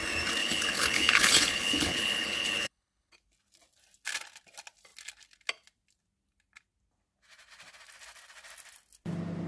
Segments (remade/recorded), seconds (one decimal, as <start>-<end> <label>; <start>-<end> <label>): 0.0-0.4 recorded; 0.4-3.1 remade; 3.1-9.5 recorded